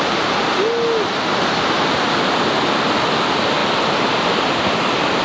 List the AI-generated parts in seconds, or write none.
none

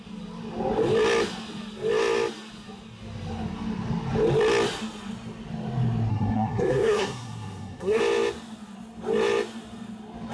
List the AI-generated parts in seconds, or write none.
6.1-8.0 (codec, SNAC)